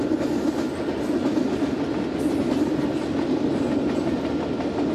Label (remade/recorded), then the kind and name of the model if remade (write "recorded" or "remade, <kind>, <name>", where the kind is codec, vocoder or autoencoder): recorded